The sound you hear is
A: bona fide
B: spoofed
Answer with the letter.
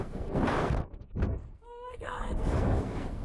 B